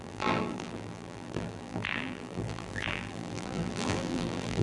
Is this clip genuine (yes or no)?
no